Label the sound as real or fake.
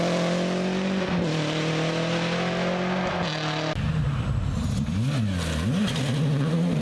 real